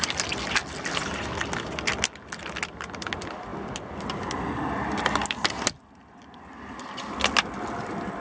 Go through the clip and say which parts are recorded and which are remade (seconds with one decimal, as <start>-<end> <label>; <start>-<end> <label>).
0.0-8.2 recorded